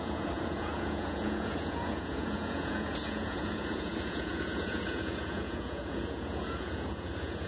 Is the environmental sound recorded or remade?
remade